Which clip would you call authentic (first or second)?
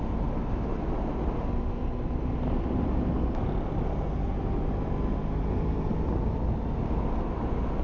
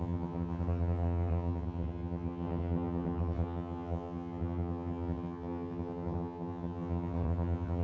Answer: first